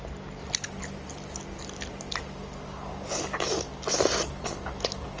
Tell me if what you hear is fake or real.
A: real